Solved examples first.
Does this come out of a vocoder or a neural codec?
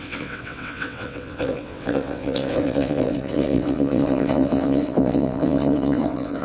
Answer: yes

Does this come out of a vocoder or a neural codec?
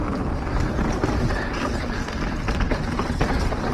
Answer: no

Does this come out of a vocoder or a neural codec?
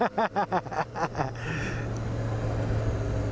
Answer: no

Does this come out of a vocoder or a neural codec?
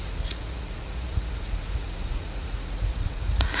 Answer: yes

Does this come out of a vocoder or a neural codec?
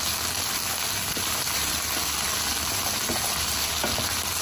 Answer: no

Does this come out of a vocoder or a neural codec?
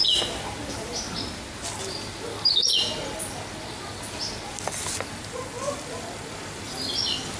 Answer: no